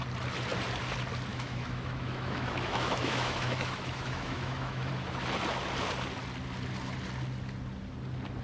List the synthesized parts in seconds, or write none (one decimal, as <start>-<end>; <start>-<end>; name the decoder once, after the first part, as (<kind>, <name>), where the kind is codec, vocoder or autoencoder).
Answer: 1.3-4.9 (autoencoder, DAC-VAE)